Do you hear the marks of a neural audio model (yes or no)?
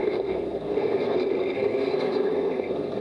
yes